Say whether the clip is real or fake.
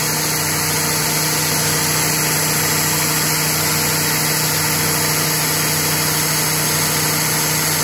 real